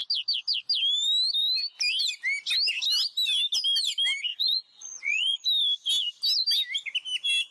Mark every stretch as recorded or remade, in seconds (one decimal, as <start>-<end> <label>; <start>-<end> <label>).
0.0-4.3 recorded; 4.3-5.4 remade; 5.4-7.5 recorded